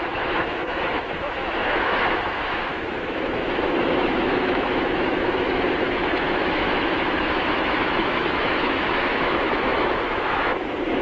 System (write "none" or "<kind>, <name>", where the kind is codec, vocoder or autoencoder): autoencoder, DAC-VAE